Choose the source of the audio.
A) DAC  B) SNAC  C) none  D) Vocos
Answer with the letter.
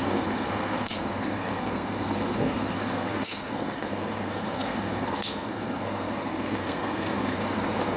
B